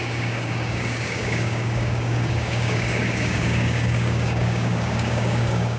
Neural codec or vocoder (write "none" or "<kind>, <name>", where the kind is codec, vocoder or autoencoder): codec, DAC